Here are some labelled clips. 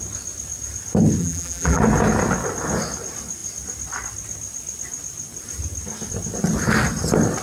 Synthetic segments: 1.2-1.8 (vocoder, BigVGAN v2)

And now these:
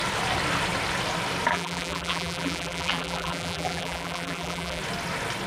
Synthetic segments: 1.5-4.8 (vocoder, BigVGAN v2)

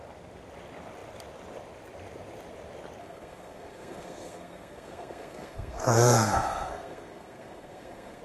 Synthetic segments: 3.0-8.2 (codec, SNAC)

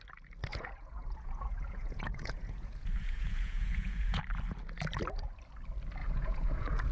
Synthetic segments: 0.5-4.2 (vocoder, Vocos); 6.0-6.9

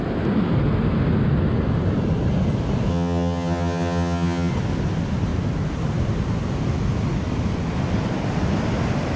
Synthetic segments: 2.9-4.5 (vocoder, HiFi-GAN)